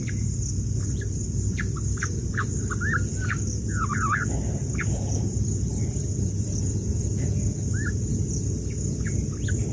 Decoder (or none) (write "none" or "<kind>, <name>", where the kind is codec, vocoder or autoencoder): none